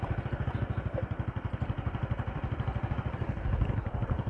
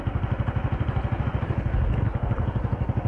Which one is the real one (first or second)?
second